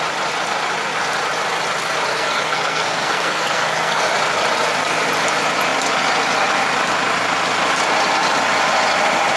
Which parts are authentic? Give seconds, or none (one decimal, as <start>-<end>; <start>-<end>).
0.0-2.1; 4.1-9.4